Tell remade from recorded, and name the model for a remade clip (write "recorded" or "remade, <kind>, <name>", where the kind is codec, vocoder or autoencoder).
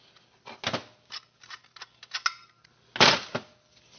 recorded